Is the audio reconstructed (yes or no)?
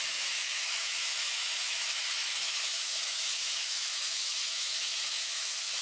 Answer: yes